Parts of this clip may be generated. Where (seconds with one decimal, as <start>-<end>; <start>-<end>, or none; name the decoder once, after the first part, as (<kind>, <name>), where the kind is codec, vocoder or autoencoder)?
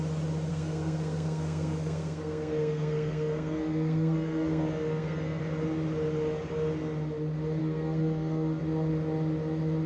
0.5-5.4 (codec, SNAC); 7.6-8.6